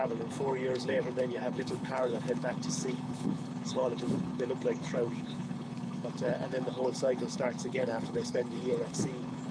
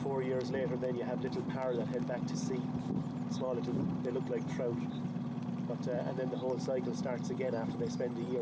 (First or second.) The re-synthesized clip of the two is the first